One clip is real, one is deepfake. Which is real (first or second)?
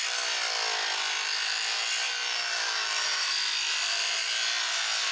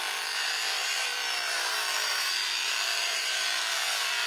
first